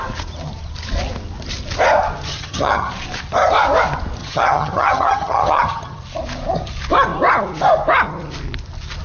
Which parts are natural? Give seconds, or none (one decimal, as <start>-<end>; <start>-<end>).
0.0-2.3; 2.9-4.2; 6.0-9.0